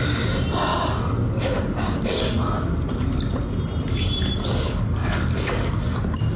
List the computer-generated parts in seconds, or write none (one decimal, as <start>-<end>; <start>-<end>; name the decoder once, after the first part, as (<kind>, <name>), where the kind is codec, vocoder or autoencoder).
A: none

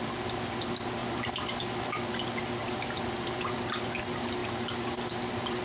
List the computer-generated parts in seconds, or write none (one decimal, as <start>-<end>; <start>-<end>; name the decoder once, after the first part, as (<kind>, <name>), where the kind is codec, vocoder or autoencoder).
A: none

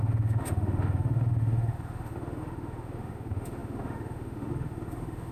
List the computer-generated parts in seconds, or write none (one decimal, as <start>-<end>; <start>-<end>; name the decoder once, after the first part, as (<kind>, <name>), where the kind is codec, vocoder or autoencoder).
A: 0.0-5.3 (autoencoder, DAC-VAE)

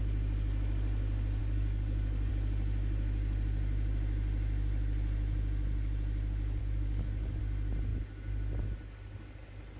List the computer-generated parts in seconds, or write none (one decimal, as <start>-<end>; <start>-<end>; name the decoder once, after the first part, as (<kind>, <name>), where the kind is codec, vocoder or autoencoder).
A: 1.4-2.3 (codec, DAC); 6.6-7.4

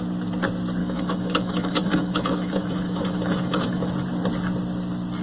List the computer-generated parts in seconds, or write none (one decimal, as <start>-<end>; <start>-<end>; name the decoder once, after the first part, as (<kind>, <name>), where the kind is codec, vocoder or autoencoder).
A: 0.8-3.9 (autoencoder, DAC-VAE)

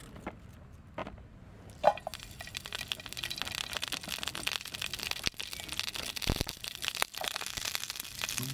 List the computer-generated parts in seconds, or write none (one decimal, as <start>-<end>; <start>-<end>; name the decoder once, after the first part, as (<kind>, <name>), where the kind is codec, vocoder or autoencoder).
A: 0.0-1.0 (vocoder, BigVGAN v2); 6.1-8.5

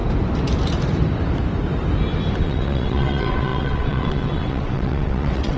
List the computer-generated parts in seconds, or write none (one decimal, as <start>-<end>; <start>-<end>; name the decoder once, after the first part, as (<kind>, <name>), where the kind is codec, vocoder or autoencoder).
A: 2.4-5.6 (vocoder, WaveNeXt)